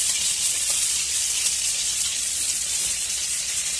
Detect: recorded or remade remade